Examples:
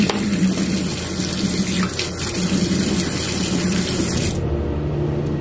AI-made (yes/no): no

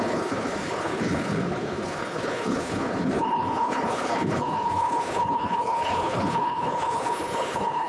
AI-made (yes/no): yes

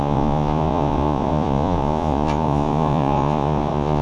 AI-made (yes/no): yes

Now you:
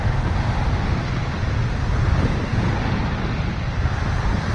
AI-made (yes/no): no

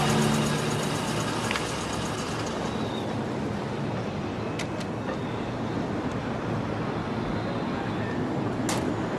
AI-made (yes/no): no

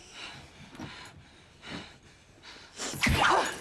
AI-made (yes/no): no